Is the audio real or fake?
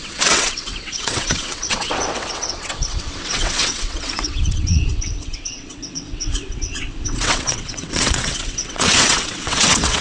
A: fake